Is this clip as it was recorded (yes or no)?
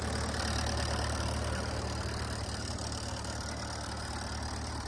yes